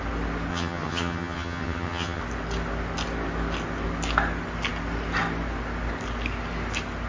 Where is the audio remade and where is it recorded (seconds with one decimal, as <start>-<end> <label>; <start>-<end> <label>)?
0.0-0.5 recorded; 0.5-2.2 remade; 2.2-7.1 recorded